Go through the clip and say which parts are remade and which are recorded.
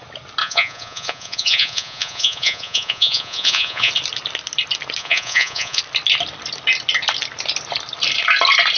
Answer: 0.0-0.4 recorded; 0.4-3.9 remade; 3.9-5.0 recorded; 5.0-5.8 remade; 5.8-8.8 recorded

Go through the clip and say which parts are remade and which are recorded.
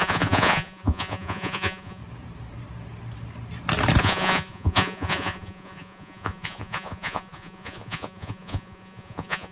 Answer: 0.0-2.0 remade; 2.0-4.0 recorded; 4.0-9.5 remade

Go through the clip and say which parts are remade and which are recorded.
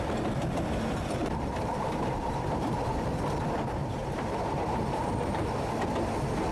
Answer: 0.0-1.2 recorded; 1.2-2.8 remade; 2.8-3.8 recorded; 3.8-5.5 remade; 5.5-6.5 recorded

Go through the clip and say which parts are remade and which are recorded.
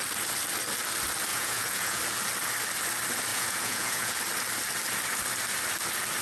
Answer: 0.0-1.3 recorded; 1.3-2.0 remade; 2.0-3.3 recorded; 3.3-4.1 remade; 4.1-6.2 recorded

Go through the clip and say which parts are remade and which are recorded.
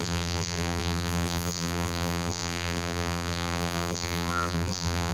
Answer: 0.0-5.1 remade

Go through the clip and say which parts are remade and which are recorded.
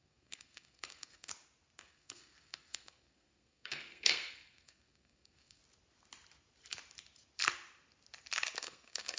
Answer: 0.0-1.3 remade; 1.3-1.8 recorded; 1.8-5.6 remade; 5.6-8.6 recorded; 8.6-9.2 remade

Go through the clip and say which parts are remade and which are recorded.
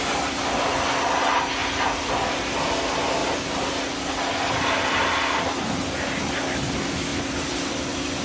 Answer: 0.0-1.6 recorded; 1.6-2.1 remade; 2.1-8.2 recorded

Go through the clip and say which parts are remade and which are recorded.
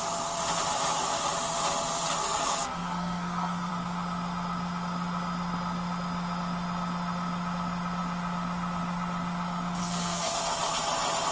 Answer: 0.0-2.2 recorded; 2.2-3.7 remade; 3.7-9.8 recorded; 9.8-10.4 remade; 10.4-11.3 recorded